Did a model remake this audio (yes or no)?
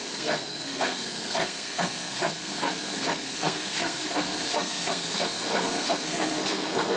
yes